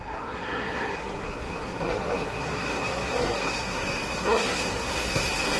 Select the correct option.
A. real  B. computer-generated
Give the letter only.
B